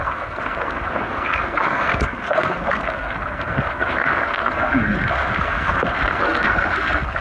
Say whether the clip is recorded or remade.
remade